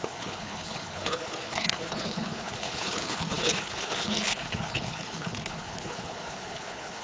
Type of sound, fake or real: fake